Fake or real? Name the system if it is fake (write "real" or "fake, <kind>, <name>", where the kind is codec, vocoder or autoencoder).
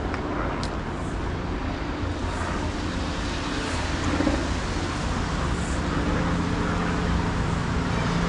real